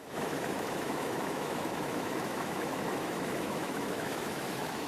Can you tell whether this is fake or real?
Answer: fake